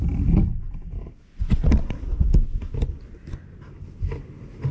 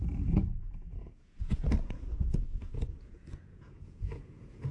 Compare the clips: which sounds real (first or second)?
first